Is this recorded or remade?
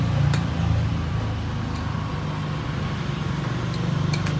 recorded